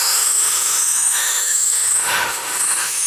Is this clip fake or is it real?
fake